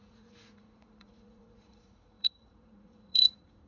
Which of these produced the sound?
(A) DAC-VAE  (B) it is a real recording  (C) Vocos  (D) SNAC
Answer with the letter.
C